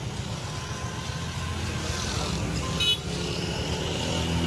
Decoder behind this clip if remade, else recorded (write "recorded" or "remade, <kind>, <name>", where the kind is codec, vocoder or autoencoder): recorded